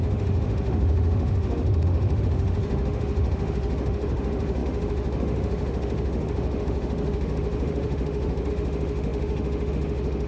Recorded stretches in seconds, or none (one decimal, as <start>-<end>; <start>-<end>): none

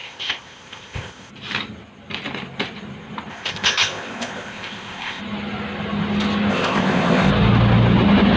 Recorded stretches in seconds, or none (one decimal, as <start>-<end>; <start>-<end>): 1.3-3.3; 5.2-6.5; 7.3-8.4

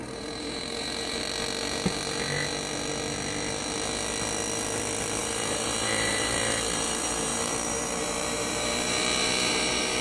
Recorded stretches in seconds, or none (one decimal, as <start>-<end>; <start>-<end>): 1.2-5.2

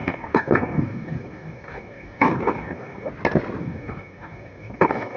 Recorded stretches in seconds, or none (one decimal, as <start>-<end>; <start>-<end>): 3.1-3.6

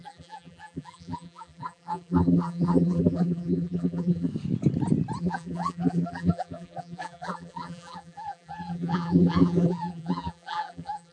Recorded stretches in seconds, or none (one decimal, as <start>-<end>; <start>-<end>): 4.3-5.2

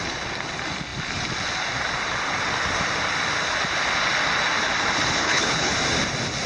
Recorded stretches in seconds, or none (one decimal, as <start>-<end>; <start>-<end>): 0.0-5.2; 5.7-6.5

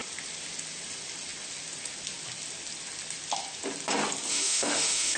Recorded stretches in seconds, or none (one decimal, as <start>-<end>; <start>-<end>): 0.0-4.3